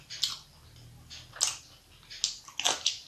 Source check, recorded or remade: recorded